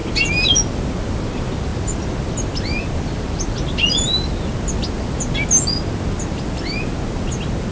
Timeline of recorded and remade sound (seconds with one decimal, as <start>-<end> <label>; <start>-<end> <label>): 0.0-7.7 recorded